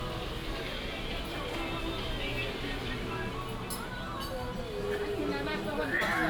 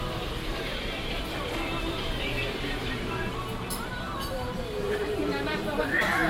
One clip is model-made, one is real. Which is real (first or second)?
first